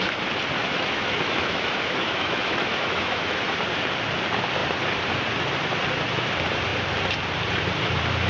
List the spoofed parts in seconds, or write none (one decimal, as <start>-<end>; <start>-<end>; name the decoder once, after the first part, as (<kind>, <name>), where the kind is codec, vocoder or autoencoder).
0.6-3.4 (autoencoder, DAC-VAE)